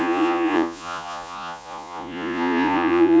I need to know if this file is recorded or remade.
remade